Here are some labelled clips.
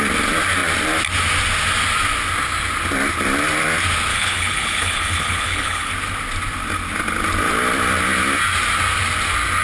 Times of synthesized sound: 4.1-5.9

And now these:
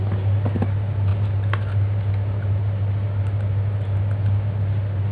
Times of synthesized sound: none

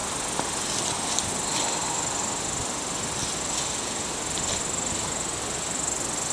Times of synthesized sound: none

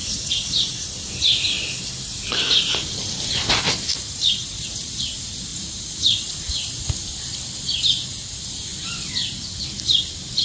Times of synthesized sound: 0.0-0.9; 3.9-5.0; 5.5-6.8

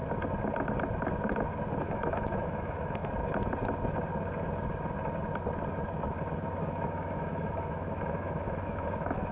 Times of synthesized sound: 1.8-3.0; 6.6-9.3

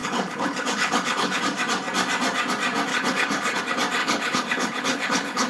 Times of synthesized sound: 0.0-1.4; 2.9-3.6; 4.0-5.5